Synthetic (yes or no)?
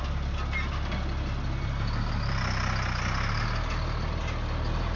no